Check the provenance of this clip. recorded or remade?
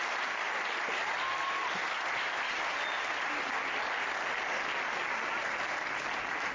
recorded